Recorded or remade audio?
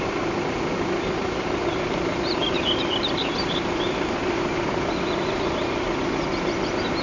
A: recorded